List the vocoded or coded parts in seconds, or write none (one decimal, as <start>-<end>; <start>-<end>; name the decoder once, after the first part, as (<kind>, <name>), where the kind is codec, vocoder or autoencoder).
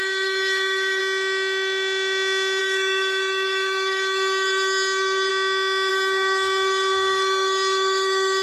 0.0-1.0 (codec, SNAC); 2.6-5.3; 5.9-8.4